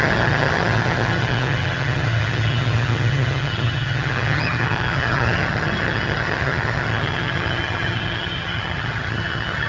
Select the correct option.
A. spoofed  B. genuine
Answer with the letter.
A